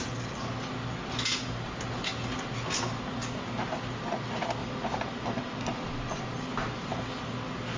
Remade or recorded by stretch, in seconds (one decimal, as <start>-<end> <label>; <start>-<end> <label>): 0.0-4.6 recorded; 4.6-6.1 remade; 6.1-7.8 recorded